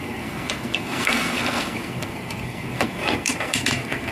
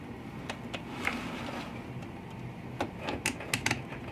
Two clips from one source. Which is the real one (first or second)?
second